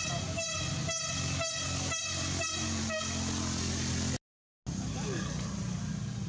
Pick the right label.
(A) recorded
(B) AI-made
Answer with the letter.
A